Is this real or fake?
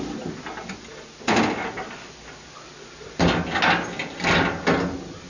real